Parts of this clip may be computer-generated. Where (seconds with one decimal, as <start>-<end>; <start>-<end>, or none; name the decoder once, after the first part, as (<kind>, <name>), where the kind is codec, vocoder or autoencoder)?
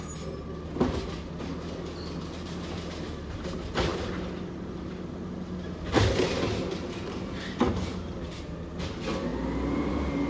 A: none